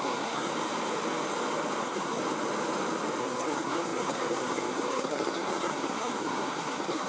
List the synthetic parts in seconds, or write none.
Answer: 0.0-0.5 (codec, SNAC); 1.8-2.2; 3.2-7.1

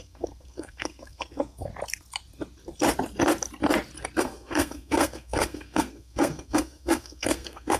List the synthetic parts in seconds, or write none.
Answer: 0.0-1.7 (codec, SNAC); 4.2-7.8

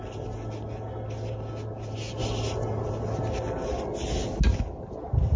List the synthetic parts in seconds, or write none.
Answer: none

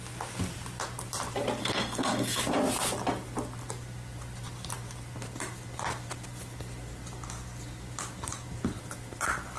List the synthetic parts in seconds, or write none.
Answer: 1.6-2.4 (codec, SNAC)